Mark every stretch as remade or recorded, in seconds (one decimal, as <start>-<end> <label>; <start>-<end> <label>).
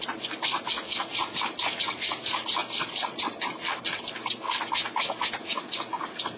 0.0-6.4 recorded